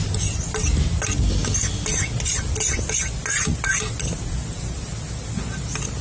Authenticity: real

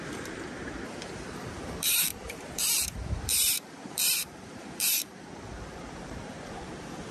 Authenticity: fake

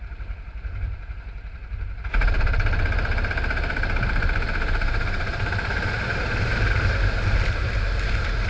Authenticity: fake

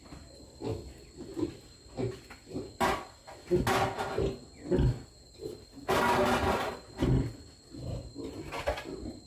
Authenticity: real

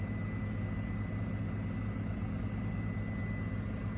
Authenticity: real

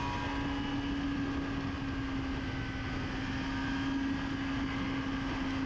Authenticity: real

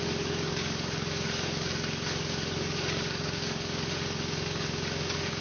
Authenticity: fake